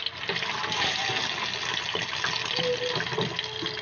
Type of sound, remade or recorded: recorded